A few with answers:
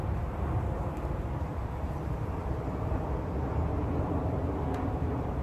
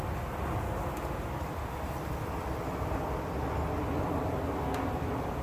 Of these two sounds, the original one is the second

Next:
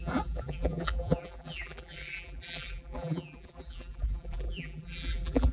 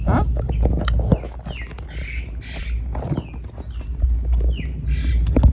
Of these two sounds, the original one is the second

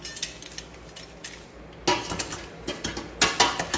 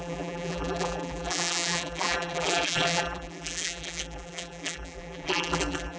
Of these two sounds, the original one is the first